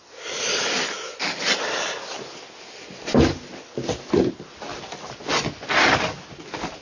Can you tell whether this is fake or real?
real